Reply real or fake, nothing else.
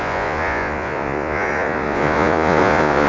fake